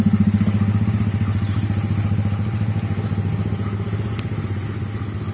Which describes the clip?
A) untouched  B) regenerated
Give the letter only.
A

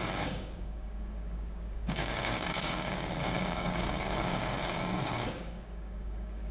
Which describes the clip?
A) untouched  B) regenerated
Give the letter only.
B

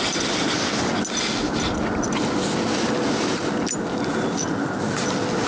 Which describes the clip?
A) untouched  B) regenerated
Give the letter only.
A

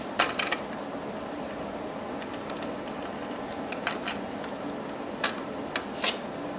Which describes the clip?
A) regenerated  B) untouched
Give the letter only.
B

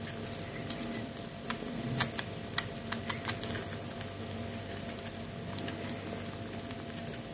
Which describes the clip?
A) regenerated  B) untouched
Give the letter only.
B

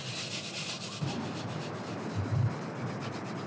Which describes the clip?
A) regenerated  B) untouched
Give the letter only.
B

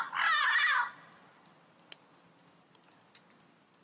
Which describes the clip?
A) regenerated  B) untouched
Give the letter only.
B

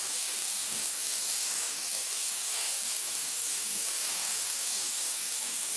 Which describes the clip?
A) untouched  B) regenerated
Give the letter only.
B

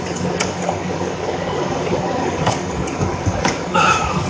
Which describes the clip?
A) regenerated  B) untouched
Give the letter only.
A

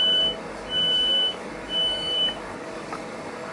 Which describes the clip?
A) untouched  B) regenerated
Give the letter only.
B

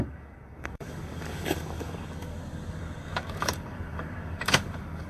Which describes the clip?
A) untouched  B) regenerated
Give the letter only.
B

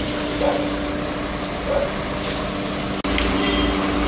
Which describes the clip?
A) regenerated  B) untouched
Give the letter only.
B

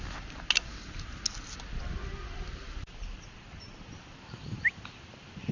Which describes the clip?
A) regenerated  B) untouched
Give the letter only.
B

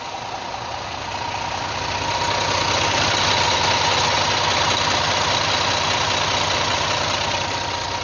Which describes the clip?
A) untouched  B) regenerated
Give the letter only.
A